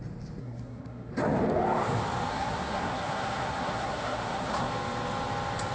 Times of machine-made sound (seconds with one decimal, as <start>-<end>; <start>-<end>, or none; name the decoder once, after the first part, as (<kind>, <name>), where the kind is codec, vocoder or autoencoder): 0.4-1.1 (codec, SNAC); 2.3-4.7